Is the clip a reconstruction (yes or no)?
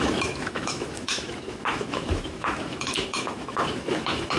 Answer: yes